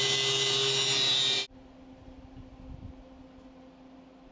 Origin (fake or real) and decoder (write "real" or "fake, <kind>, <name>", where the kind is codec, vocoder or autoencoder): real